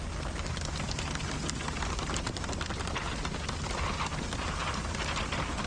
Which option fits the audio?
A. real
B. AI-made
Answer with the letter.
A